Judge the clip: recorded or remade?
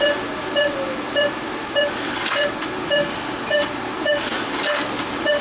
recorded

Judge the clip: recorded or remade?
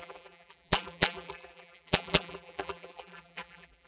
remade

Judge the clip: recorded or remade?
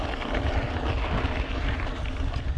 recorded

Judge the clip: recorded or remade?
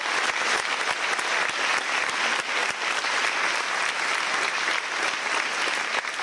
recorded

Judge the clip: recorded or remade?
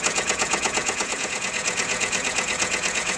remade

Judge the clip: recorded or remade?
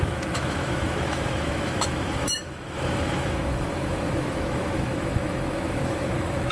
remade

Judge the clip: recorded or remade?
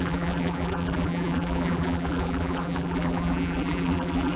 remade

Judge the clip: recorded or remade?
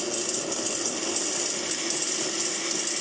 recorded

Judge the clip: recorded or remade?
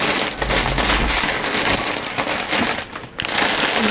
recorded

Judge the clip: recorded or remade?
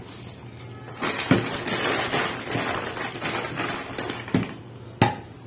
recorded